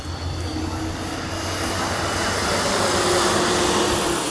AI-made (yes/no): no